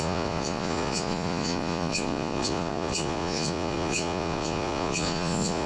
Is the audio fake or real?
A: fake